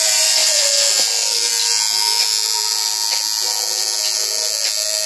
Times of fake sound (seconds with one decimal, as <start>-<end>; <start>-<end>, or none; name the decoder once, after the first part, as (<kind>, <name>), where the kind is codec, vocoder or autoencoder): none

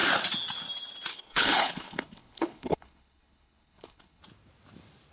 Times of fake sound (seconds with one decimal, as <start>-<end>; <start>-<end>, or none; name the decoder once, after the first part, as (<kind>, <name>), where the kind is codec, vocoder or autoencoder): 1.1-4.2 (codec, HILCodec)

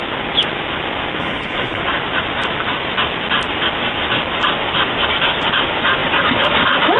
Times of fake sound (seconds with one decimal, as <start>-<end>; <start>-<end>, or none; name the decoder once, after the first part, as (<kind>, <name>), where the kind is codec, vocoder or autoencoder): 1.2-1.8 (codec, HILCodec)

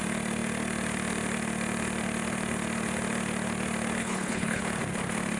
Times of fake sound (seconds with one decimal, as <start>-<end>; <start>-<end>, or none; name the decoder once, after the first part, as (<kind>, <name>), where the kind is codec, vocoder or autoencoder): 4.0-4.6 (codec, HILCodec)

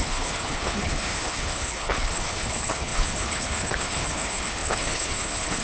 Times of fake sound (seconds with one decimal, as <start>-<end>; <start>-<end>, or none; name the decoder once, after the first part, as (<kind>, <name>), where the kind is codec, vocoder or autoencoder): 0.0-5.6 (codec, HILCodec)

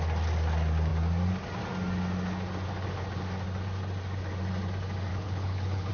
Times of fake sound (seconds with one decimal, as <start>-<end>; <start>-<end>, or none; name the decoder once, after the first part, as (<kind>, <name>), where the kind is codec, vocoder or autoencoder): 5.1-5.9 (codec, HILCodec)